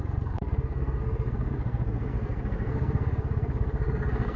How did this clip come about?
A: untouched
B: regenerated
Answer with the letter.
B